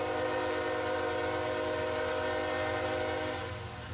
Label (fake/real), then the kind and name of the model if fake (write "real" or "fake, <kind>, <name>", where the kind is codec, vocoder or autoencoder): real